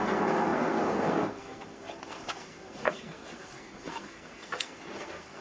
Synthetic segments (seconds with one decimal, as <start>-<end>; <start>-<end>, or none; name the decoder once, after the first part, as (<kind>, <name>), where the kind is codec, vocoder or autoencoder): 0.0-5.4 (codec, SNAC)